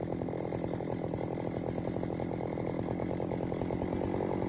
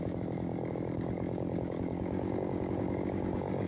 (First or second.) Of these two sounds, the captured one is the first